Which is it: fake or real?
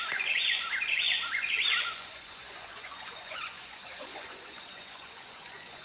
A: fake